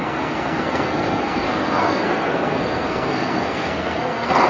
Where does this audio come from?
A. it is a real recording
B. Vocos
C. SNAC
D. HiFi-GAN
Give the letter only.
C